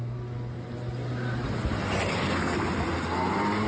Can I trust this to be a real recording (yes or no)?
yes